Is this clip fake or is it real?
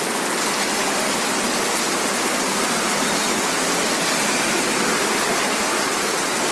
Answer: real